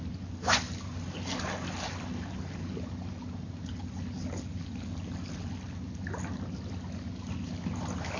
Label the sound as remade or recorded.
recorded